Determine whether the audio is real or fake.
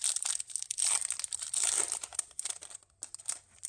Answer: real